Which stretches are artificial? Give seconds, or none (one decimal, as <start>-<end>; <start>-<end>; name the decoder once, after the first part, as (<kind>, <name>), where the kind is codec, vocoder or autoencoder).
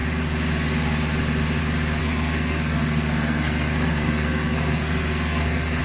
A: 2.0-5.8 (codec, SNAC)